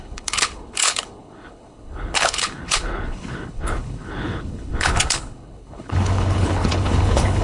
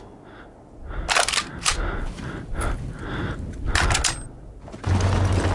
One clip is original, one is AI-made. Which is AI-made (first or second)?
first